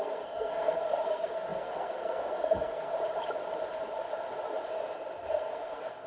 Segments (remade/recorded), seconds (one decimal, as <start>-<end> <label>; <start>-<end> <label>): 0.0-2.9 remade; 2.9-5.3 recorded; 5.3-6.1 remade